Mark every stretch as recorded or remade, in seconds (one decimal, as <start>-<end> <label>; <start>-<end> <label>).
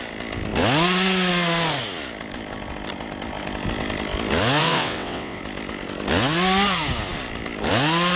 0.0-4.6 recorded; 4.6-5.4 remade; 5.4-8.2 recorded